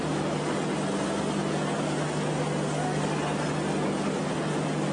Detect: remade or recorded recorded